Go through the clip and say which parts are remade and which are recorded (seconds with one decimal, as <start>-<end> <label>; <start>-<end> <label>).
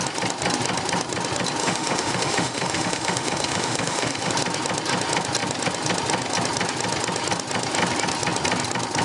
0.0-1.6 recorded; 1.6-4.3 remade; 4.3-9.0 recorded